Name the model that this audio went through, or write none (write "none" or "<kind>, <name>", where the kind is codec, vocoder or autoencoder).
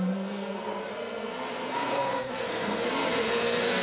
codec, SNAC